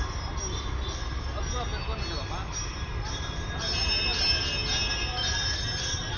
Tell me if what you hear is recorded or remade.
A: recorded